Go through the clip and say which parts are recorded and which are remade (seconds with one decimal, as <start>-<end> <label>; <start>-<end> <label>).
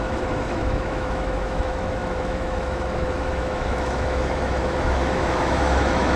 0.0-6.2 remade